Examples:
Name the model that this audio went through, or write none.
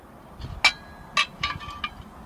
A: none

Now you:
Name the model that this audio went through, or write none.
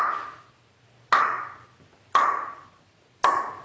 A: none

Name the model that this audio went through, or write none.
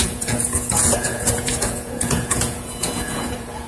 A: vocoder, Vocos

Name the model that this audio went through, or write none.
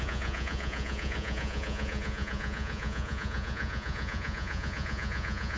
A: vocoder, Vocos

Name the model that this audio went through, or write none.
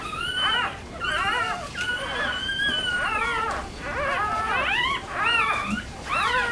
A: none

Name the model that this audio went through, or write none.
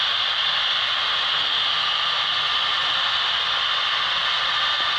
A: none